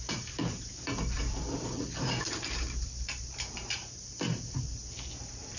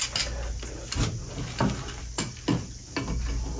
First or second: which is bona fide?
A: second